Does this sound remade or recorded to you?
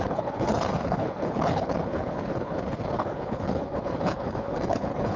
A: remade